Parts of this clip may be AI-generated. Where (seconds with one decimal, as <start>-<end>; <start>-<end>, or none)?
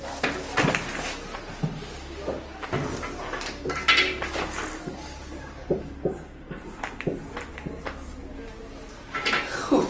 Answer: none